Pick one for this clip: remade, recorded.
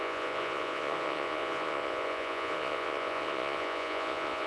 remade